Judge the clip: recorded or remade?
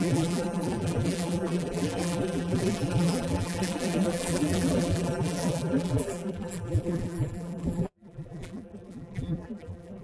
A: remade